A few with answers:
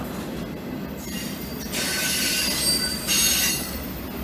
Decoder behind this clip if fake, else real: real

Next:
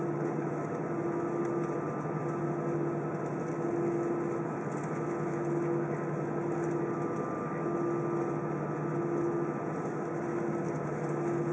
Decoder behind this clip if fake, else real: real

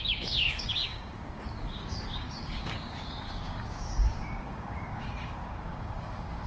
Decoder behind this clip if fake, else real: fake, codec, DAC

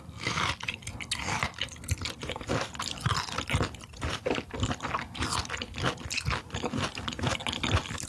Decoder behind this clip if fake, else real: real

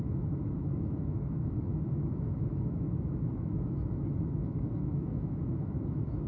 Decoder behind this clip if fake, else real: fake, autoencoder, DAC-VAE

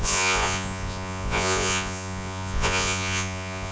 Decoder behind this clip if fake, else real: fake, vocoder, Vocos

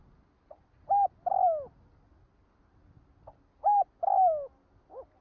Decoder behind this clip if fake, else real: real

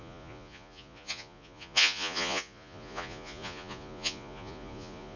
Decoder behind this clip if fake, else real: fake, vocoder, Vocos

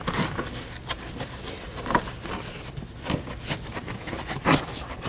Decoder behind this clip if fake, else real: real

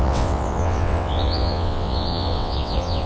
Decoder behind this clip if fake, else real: fake, vocoder, WaveNeXt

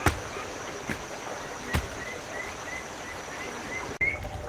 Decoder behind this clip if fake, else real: real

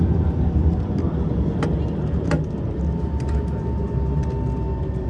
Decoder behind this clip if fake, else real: real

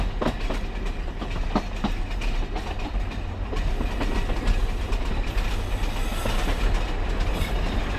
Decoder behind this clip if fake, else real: real